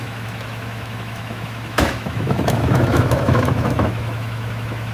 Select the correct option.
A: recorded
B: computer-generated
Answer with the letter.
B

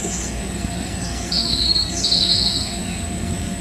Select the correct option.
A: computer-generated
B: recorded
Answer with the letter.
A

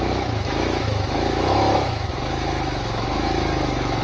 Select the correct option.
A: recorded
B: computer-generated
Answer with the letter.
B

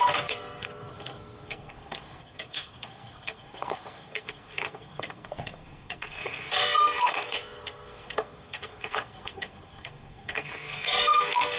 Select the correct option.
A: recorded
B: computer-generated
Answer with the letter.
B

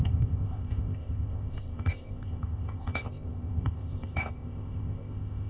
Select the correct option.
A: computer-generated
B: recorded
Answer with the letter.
A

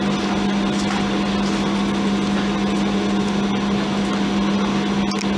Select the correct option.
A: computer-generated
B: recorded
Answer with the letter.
B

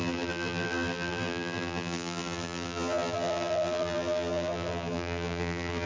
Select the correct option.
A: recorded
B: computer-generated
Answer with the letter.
B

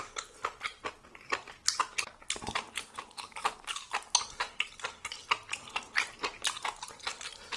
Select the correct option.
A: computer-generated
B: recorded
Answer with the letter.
B